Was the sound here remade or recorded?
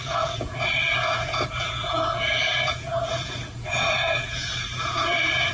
remade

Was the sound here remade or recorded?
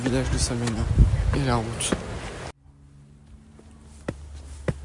recorded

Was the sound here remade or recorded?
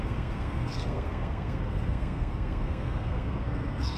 remade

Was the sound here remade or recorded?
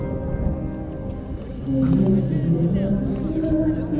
recorded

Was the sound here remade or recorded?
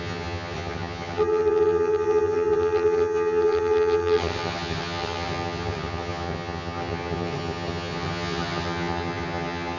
remade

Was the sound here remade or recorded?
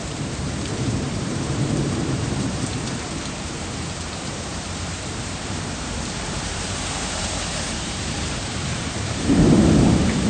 remade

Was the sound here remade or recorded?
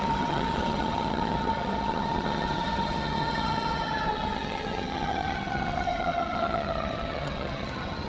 remade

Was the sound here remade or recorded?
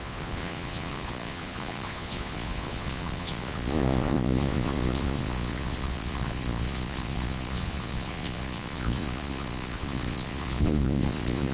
remade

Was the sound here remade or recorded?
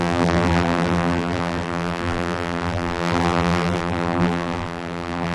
remade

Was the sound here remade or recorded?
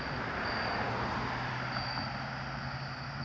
recorded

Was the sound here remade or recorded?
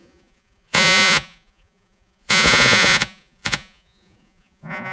remade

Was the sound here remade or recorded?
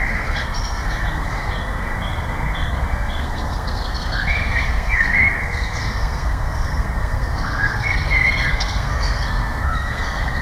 remade